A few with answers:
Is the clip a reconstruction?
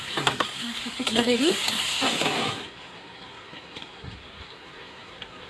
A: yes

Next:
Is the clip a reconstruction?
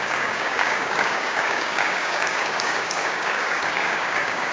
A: yes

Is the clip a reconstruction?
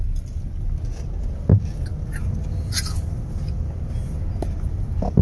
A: no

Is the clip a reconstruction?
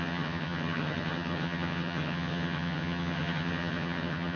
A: yes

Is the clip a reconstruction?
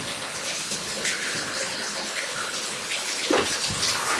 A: yes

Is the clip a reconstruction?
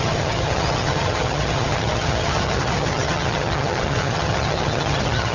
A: yes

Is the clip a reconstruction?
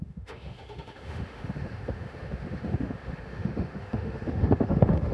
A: yes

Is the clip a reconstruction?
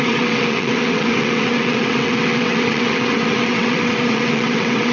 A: yes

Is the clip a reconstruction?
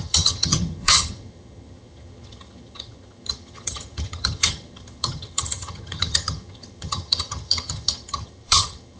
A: yes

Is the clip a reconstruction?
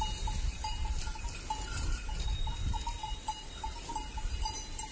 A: no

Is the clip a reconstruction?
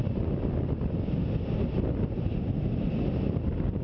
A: no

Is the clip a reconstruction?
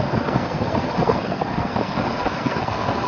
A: yes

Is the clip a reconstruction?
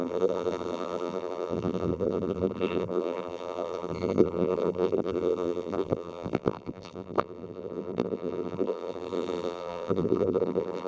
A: yes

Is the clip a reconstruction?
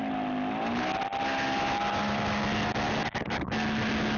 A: no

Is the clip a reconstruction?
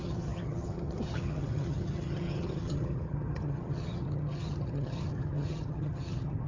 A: yes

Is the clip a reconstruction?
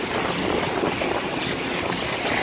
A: no